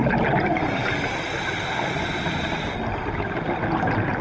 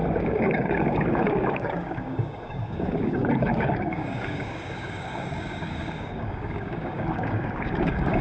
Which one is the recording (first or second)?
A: first